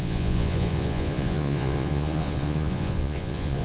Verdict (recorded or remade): remade